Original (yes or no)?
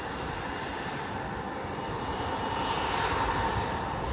yes